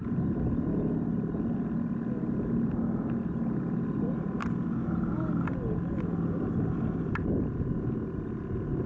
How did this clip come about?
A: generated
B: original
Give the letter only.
B